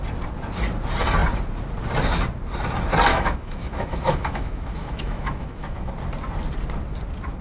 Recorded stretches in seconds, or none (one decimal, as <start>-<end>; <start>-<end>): 0.0-3.1; 5.9-7.4